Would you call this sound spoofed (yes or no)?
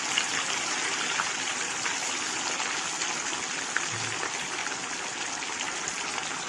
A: no